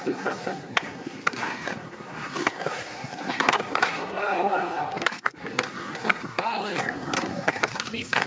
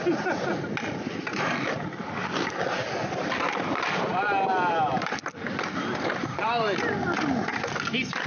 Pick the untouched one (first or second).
second